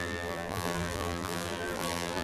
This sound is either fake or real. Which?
fake